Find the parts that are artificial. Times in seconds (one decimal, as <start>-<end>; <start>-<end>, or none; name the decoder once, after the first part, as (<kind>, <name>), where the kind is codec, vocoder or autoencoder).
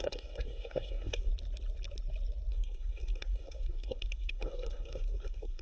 0.0-1.3 (codec, SNAC); 2.5-5.6